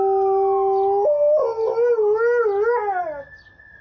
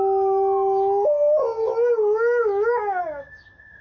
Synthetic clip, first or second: second